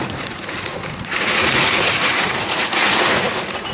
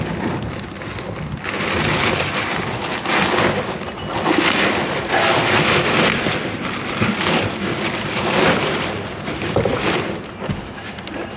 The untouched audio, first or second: second